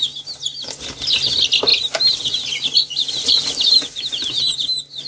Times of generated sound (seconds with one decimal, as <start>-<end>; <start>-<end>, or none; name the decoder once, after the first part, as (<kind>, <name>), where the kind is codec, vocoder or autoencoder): none